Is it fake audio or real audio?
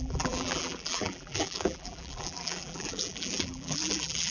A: fake